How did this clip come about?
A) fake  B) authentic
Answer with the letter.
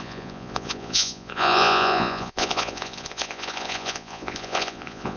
A